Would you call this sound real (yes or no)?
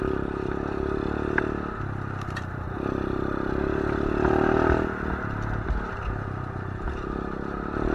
yes